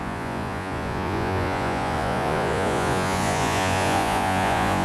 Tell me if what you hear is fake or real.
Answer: fake